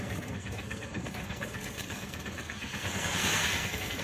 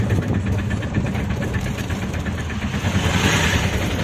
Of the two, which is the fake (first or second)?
first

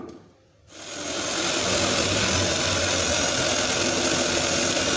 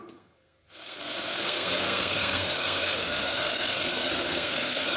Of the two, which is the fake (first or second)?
second